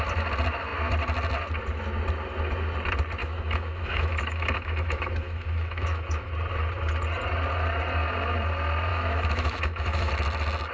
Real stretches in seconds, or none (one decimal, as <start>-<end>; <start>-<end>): 0.0-3.2; 6.3-8.9; 10.1-10.7